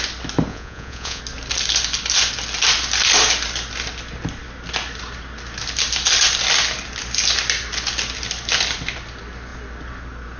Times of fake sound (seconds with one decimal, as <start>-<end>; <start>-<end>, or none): 0.5-1.2